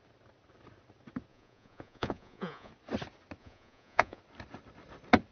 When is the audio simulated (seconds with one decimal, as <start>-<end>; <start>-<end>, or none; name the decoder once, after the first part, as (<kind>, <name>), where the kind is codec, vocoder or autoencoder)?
1.3-2.7 (vocoder, Vocos); 3.4-4.2

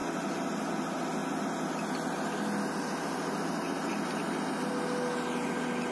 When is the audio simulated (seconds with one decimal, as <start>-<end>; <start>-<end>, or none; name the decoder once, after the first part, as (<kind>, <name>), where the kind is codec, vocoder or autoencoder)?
none

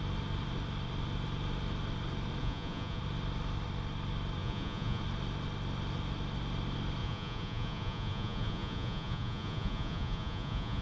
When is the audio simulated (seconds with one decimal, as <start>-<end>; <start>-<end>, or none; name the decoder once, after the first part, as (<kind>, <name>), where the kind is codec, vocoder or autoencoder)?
2.4-3.0 (vocoder, Vocos); 4.4-5.0; 7.0-10.8